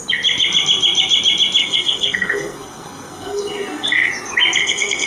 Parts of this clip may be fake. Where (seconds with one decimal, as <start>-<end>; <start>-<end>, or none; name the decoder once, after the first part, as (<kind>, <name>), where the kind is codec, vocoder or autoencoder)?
1.6-4.1 (codec, SNAC); 4.6-5.1

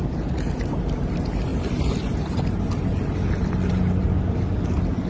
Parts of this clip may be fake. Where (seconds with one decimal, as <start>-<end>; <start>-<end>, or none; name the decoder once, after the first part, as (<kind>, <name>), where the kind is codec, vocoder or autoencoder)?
none

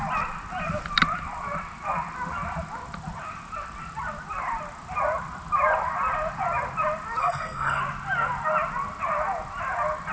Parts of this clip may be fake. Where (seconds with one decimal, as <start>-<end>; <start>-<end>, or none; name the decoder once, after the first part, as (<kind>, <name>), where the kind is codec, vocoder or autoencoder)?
7.2-7.8 (codec, SNAC)

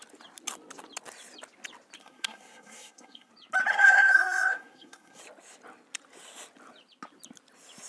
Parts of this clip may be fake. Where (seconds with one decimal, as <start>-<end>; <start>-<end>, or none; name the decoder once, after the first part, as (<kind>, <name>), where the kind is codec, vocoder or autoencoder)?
2.0-3.3 (codec, SNAC); 3.7-5.2

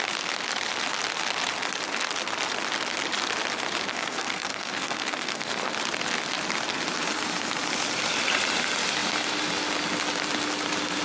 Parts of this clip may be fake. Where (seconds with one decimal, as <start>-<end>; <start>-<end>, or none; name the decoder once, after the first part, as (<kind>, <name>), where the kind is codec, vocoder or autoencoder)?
3.9-5.7 (codec, SNAC)

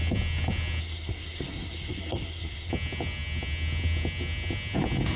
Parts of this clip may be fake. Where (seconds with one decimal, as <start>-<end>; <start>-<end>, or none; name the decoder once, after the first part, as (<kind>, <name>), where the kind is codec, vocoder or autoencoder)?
0.8-2.7 (codec, SNAC)

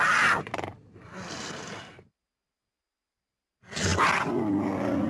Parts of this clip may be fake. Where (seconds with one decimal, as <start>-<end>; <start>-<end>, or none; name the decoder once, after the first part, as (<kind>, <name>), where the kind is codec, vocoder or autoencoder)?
none

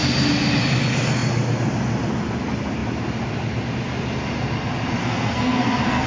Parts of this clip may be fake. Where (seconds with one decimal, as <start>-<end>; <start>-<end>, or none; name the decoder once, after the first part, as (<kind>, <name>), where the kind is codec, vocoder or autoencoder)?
5.0-6.1 (codec, SNAC)